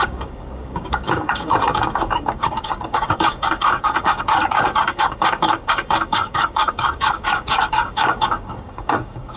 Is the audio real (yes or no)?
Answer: no